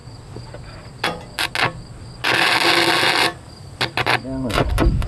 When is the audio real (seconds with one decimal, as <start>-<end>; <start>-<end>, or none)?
0.0-5.1

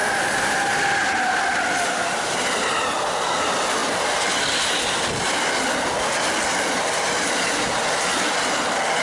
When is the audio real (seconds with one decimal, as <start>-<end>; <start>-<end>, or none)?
2.3-9.0

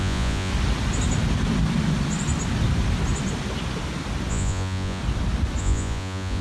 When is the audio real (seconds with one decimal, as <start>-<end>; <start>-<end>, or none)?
0.5-4.3; 5.0-5.6